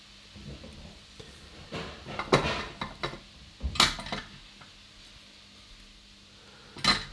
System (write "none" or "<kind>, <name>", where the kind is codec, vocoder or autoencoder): none